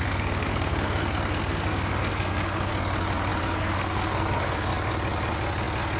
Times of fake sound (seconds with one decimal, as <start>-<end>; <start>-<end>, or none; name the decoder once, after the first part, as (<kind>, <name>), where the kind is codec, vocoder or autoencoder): 0.0-2.7 (codec, SNAC); 3.4-4.7